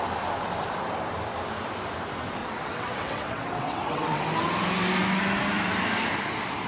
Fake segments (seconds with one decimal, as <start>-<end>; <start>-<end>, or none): 2.4-4.2